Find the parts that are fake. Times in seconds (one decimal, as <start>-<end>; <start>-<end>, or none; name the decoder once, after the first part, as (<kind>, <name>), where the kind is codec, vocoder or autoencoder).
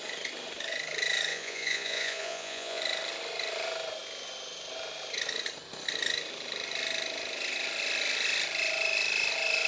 1.3-2.8 (vocoder, Vocos)